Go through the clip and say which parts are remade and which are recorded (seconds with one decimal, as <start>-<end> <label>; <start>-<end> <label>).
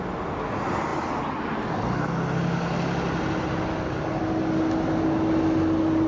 0.0-6.1 recorded